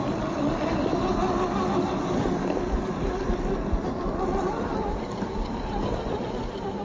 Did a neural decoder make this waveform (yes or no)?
no